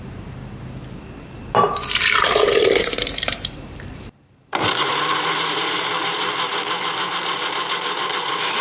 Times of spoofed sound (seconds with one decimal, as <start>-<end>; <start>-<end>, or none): 0.0-0.4; 1.3-8.6